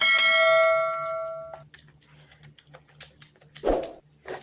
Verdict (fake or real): real